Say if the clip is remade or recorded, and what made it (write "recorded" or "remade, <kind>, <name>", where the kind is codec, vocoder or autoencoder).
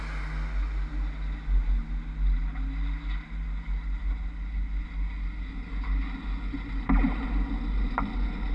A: recorded